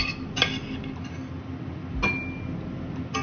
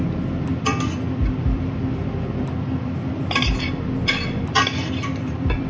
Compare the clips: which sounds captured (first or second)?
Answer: first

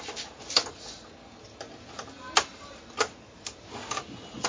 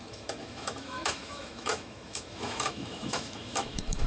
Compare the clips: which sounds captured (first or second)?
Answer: first